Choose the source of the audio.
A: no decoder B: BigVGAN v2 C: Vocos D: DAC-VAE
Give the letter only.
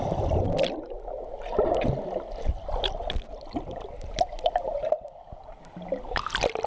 A